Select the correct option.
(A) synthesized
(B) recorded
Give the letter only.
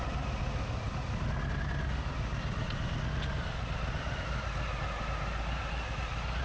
B